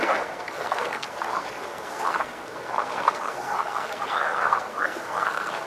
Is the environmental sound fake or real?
fake